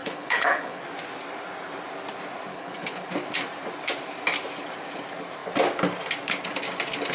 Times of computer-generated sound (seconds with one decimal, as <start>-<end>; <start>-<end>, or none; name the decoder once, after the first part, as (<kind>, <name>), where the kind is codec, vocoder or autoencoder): 0.0-0.8 (codec, HILCodec); 2.5-3.1